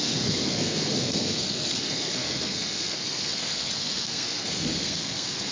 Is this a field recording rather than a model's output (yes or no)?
no